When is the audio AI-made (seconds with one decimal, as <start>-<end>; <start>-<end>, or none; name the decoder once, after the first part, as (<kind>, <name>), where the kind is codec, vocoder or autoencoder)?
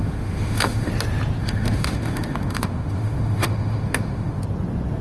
0.0-0.9 (autoencoder, DAC-VAE); 1.4-4.4